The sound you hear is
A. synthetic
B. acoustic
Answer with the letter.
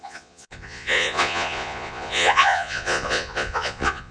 A